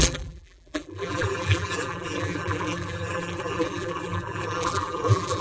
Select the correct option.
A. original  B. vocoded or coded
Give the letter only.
B